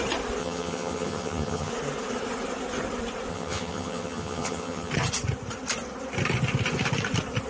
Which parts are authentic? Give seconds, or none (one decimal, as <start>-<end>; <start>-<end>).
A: 0.0-0.4; 1.7-3.3; 4.9-7.5